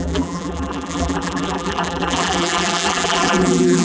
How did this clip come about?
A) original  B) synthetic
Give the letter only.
B